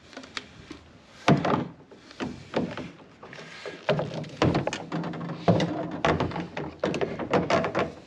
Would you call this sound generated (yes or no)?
no